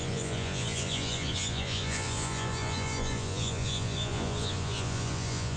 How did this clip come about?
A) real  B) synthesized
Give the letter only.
B